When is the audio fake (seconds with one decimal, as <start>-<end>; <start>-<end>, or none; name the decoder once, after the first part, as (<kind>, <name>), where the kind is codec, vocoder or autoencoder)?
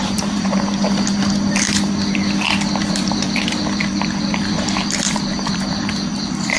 0.0-0.7 (vocoder, BigVGAN v2); 2.8-6.6